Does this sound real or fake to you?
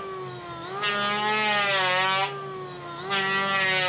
real